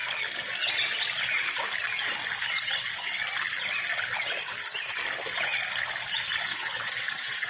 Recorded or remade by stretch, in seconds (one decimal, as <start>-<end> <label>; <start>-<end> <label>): 0.0-6.5 recorded; 6.5-7.5 remade